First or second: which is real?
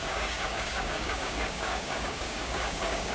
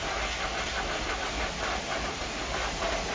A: second